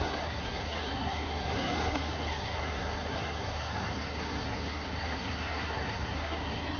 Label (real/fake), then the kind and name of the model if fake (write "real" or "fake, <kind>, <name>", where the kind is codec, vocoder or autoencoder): fake, codec, SNAC